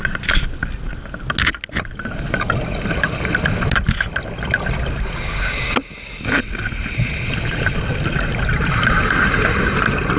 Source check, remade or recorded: recorded